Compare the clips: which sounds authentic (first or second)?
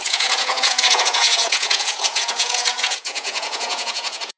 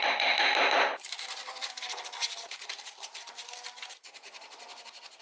second